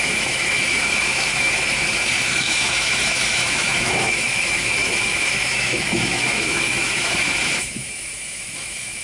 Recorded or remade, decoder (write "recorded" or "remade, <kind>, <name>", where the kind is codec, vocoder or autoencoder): remade, autoencoder, DAC-VAE